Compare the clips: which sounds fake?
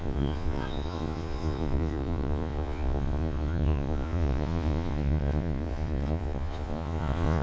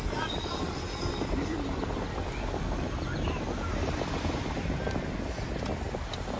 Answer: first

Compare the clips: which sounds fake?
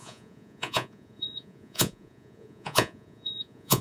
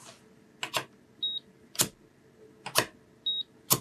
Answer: first